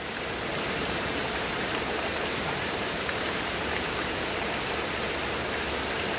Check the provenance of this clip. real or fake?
fake